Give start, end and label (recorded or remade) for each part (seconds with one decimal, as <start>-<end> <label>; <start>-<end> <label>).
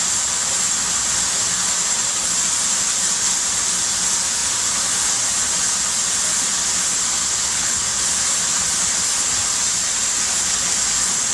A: 0.0-7.2 recorded; 7.2-7.8 remade; 7.8-11.3 recorded